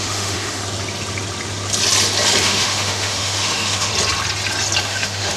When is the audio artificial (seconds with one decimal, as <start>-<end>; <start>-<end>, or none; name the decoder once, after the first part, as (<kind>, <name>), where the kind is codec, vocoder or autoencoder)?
0.0-0.6 (autoencoder, DAC-VAE); 2.4-3.9; 4.8-5.4